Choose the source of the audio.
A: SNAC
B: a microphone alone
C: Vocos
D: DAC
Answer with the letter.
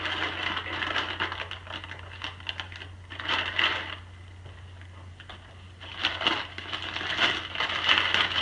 B